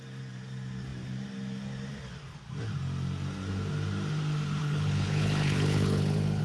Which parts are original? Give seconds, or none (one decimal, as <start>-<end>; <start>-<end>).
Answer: 0.0-4.6